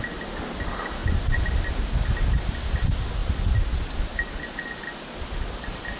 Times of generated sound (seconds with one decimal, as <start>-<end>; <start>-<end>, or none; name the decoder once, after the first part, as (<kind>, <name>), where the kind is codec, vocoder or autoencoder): 1.0-1.6 (vocoder, BigVGAN v2); 3.2-4.3